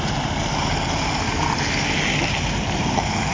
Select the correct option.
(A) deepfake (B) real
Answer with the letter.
B